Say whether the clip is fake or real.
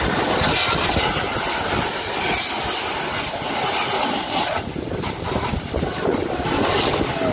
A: real